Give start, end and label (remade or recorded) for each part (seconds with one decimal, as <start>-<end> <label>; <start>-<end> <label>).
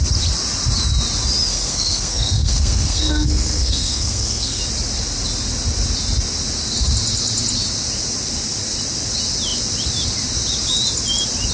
0.0-1.5 recorded; 1.5-4.6 remade; 4.6-11.5 recorded